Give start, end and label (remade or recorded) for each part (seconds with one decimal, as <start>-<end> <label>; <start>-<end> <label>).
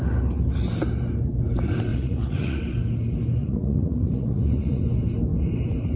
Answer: 0.0-1.9 recorded; 1.9-2.6 remade; 2.6-3.4 recorded; 3.4-4.8 remade; 4.8-6.0 recorded